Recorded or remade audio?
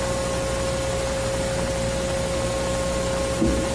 recorded